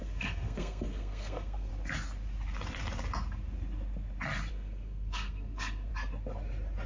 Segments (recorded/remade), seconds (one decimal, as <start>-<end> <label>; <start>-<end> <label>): 0.0-1.7 remade; 1.7-4.5 recorded; 4.5-5.9 remade; 5.9-6.9 recorded